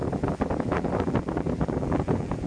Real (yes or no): no